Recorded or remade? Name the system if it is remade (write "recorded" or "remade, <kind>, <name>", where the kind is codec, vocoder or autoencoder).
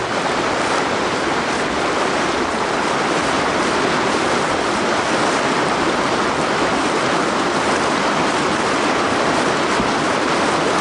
recorded